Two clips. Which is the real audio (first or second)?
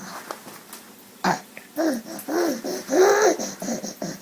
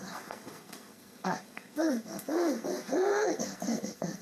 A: first